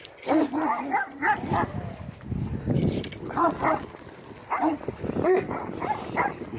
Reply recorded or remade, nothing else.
recorded